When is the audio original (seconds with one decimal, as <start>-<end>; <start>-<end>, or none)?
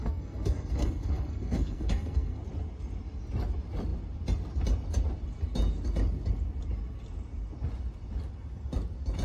2.4-9.2